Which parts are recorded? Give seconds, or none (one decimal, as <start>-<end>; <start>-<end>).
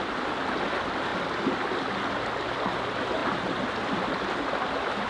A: 0.0-5.1